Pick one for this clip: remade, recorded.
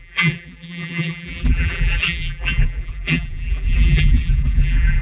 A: remade